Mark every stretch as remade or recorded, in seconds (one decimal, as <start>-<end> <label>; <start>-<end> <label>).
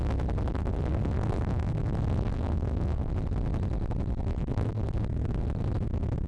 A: 0.0-0.5 recorded; 0.5-3.1 remade; 3.1-4.3 recorded; 4.3-5.0 remade; 5.0-6.3 recorded